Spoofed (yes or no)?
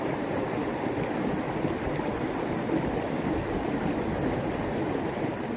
no